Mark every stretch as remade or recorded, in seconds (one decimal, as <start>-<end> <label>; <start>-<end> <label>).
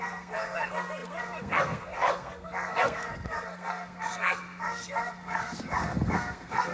0.0-6.7 remade